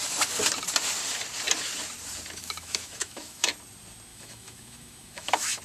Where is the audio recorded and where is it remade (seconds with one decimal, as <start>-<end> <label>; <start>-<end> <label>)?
0.0-2.4 recorded; 2.4-3.5 remade; 3.5-4.1 recorded; 4.1-5.6 remade